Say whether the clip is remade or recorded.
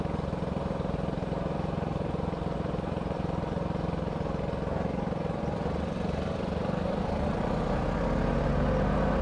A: recorded